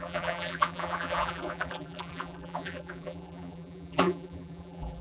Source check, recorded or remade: remade